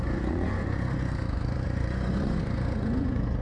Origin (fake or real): fake